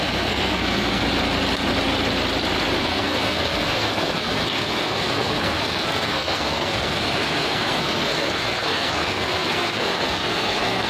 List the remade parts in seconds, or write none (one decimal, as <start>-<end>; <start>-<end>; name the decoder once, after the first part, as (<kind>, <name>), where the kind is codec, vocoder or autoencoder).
0.0-1.0 (codec, SNAC); 2.8-10.9